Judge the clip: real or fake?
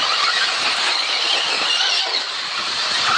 real